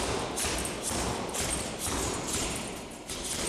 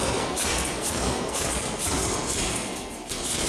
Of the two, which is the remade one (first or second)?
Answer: second